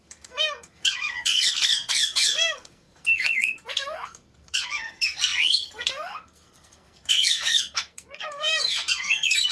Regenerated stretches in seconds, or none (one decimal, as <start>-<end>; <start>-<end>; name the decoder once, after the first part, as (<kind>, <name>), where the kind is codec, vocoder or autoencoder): 0.0-9.5 (codec, SNAC)